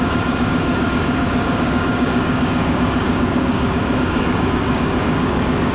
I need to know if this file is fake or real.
fake